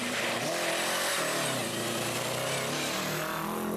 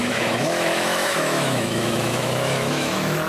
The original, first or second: first